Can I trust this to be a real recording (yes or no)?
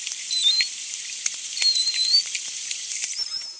no